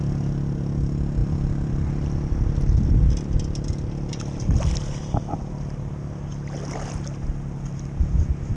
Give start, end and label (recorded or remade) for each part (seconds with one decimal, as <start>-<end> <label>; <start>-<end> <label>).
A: 0.0-1.2 recorded; 1.2-5.5 remade; 5.5-8.6 recorded

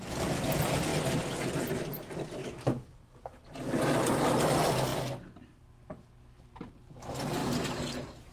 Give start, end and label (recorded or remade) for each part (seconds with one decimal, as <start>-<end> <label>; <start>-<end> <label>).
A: 0.0-2.4 recorded; 2.4-3.4 remade; 3.4-8.3 recorded

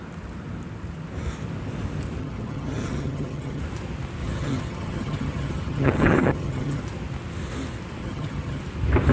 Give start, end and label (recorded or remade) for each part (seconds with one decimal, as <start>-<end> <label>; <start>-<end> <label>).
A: 0.0-2.2 recorded; 2.2-3.6 remade; 3.6-4.2 recorded; 4.2-6.8 remade; 6.8-8.0 recorded; 8.0-8.6 remade; 8.6-9.1 recorded

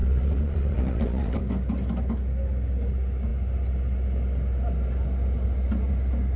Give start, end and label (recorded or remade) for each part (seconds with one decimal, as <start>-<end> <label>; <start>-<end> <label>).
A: 0.0-1.4 remade; 1.4-6.4 recorded

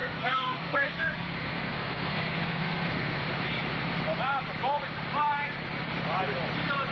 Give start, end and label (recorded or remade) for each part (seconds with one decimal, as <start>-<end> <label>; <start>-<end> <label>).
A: 0.0-3.2 remade; 3.2-6.9 recorded

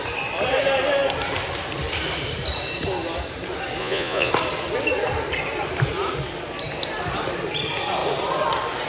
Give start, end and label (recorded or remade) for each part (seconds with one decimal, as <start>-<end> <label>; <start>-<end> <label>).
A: 0.0-3.8 recorded; 3.8-4.3 remade; 4.3-8.9 recorded

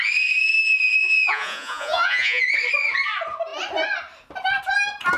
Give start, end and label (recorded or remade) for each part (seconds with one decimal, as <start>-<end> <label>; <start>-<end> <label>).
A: 0.0-1.0 recorded; 1.0-2.4 remade; 2.4-5.2 recorded